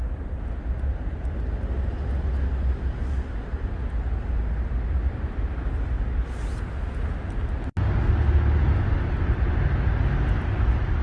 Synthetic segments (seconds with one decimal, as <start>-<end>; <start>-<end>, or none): none